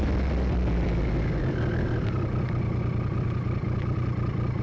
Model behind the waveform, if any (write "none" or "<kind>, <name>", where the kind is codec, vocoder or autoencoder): none